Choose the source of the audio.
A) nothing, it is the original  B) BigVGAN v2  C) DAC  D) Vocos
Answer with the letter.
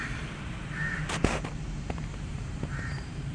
B